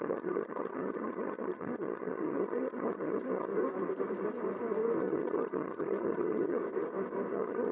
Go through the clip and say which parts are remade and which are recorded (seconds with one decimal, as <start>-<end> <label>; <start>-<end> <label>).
0.0-3.5 remade; 3.5-5.0 recorded; 5.0-6.6 remade; 6.6-7.3 recorded; 7.3-7.7 remade